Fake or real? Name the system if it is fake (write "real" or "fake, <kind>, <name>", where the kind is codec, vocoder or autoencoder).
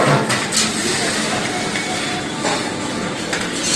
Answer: real